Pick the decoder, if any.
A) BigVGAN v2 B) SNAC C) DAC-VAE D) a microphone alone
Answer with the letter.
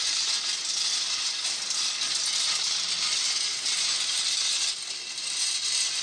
D